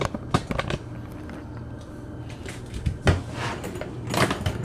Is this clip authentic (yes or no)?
yes